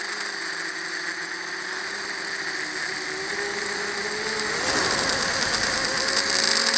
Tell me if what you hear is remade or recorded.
recorded